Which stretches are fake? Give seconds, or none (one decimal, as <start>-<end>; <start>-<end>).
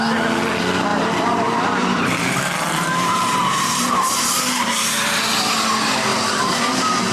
0.9-5.2; 6.1-6.6